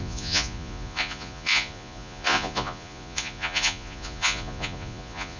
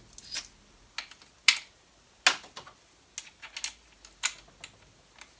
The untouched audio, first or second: second